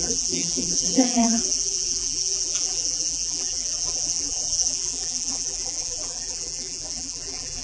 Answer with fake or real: fake